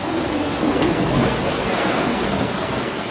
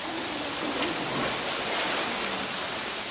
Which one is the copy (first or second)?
first